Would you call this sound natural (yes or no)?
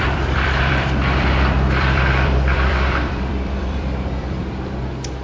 no